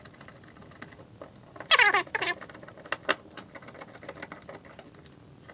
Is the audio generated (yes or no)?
no